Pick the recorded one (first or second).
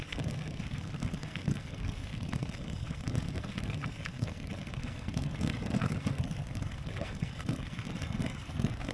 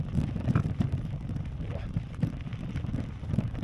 second